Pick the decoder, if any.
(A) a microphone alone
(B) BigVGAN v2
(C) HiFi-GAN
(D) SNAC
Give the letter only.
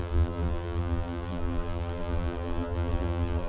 B